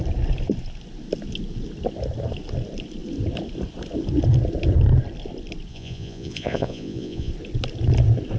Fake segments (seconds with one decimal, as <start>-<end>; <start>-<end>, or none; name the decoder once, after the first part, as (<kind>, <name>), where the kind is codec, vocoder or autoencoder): 5.7-7.3 (vocoder, Vocos)